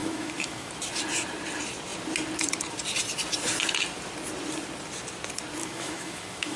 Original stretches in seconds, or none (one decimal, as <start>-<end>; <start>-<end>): 0.7-5.6